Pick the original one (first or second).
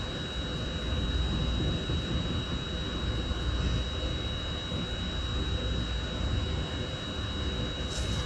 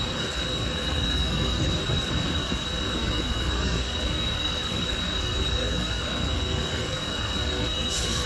first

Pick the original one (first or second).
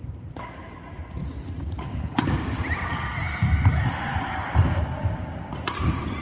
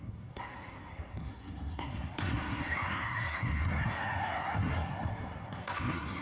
first